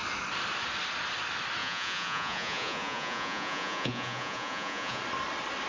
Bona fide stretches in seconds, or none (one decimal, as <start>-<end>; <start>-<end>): 0.0-1.6; 5.0-5.7